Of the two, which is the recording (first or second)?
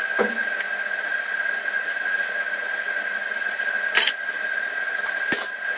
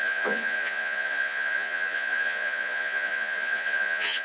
first